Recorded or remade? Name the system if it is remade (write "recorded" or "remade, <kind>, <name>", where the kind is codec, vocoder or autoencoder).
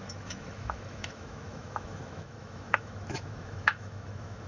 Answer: remade, autoencoder, DAC-VAE